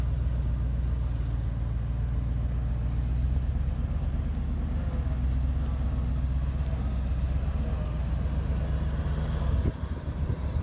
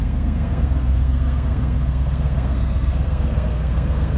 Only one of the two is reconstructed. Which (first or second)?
second